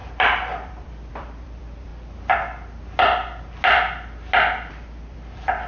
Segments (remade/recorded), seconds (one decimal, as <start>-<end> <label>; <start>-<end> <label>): 0.0-1.9 remade; 1.9-4.7 recorded; 4.7-5.7 remade